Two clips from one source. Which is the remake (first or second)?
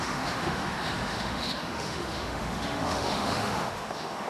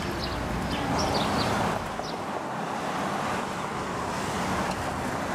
first